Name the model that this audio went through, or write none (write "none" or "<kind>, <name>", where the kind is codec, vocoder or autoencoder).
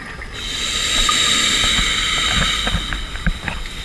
none